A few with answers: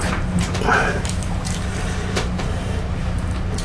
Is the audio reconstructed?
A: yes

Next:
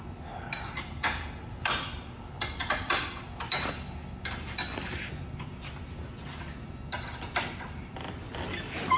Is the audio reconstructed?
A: no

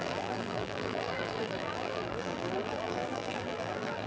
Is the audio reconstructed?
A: yes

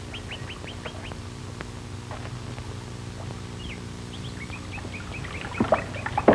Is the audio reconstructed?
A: no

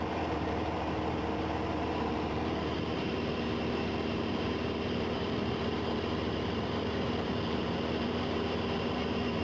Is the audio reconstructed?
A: yes